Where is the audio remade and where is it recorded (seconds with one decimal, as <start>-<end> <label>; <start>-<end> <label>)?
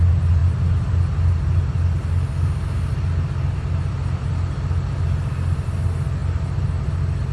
0.0-7.3 recorded